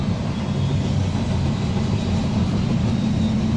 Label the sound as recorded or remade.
recorded